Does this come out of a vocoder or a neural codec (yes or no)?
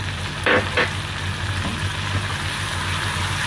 no